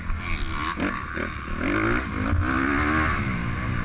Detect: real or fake real